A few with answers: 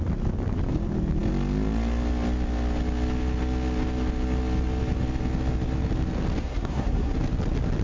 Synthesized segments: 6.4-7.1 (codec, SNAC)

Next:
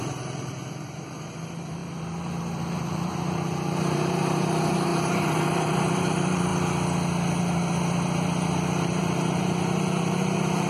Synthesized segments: 0.0-6.5 (vocoder, BigVGAN v2); 7.4-10.7